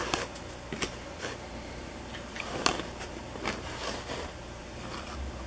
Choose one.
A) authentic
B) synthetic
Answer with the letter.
A